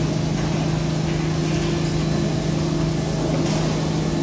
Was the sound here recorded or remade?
recorded